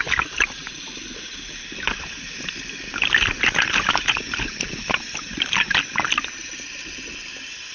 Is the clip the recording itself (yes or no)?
yes